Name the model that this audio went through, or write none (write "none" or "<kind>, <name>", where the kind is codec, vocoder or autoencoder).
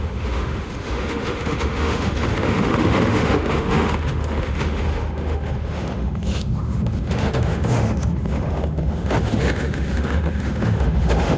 autoencoder, DAC-VAE